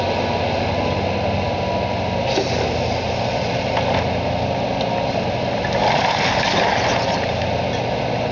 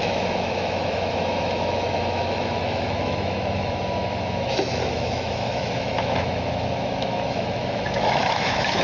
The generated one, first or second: second